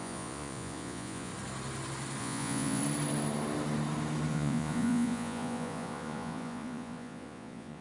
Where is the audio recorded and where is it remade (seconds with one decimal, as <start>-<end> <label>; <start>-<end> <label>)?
0.0-1.3 remade; 1.3-2.2 recorded; 2.2-2.8 remade; 2.8-4.3 recorded; 4.3-7.8 remade